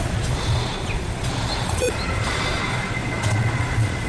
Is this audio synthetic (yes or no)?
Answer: yes